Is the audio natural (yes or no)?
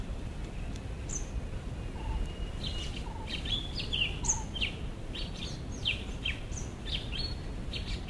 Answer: yes